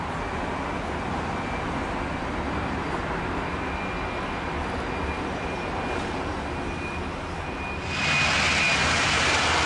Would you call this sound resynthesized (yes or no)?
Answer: no